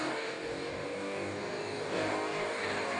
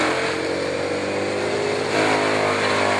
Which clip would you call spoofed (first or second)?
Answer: first